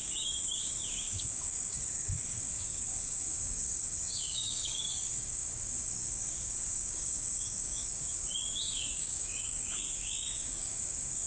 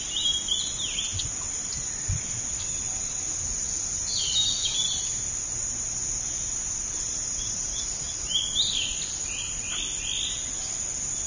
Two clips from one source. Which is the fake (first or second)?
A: first